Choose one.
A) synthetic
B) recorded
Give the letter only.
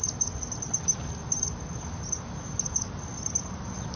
B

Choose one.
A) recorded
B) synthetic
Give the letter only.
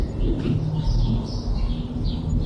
A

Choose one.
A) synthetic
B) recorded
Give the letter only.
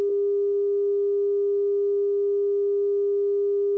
B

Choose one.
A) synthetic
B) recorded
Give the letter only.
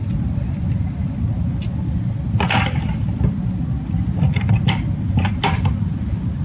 B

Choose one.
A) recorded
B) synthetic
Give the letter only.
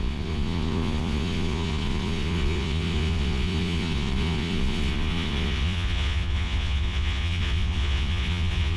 B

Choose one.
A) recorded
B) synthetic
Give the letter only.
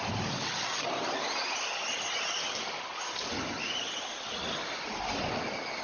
A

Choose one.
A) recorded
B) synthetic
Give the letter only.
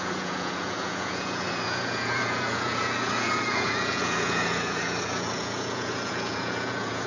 B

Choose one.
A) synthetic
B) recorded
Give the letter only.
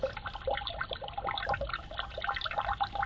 B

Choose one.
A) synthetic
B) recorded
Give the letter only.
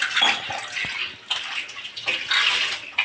B